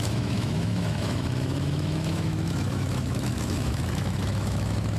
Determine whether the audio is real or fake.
fake